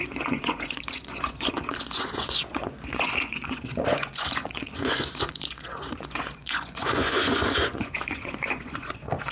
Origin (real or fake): fake